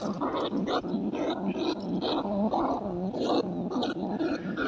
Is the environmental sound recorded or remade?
recorded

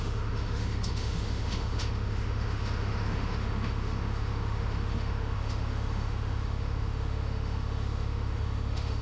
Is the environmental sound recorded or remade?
remade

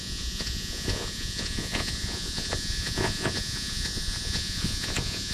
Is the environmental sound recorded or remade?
remade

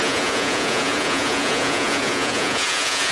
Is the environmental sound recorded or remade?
remade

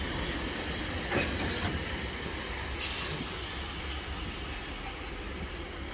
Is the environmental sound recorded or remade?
recorded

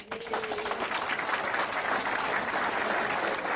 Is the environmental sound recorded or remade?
recorded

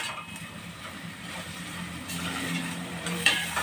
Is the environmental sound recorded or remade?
remade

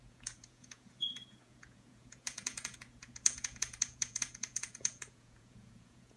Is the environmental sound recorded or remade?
remade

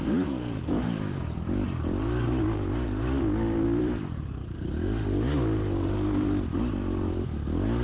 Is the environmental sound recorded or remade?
remade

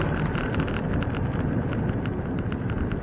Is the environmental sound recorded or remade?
recorded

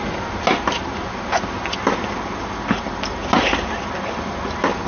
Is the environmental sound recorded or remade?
recorded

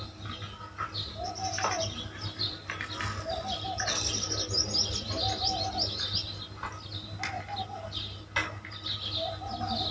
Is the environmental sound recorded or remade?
recorded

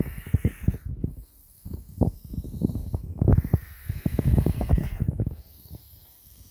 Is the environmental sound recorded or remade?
remade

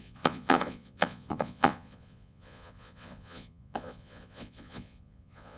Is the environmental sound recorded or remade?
remade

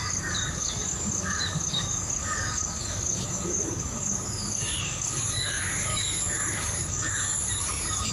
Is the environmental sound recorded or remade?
remade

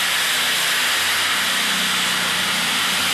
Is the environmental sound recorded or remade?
recorded